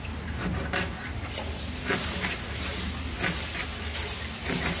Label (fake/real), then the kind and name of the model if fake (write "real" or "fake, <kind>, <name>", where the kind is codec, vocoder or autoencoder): real